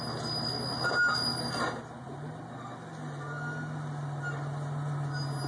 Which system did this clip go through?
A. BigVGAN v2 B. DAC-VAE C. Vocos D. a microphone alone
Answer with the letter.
D